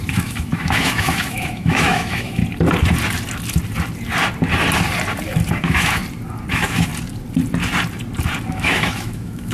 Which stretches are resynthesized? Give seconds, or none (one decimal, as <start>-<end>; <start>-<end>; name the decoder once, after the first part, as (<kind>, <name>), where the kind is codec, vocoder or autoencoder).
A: 0.0-2.4 (autoencoder, DAC-VAE); 5.6-6.0; 6.5-6.9; 8.5-9.5